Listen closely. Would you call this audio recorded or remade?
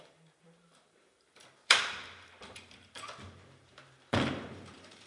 remade